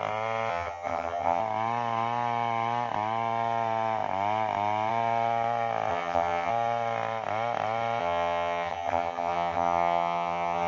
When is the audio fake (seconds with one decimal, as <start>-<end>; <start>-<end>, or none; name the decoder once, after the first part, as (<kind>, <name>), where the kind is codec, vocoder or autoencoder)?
0.5-1.4 (vocoder, HiFi-GAN); 5.9-6.5; 8.0-10.7